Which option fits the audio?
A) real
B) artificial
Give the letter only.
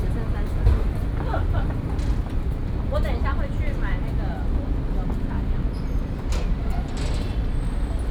A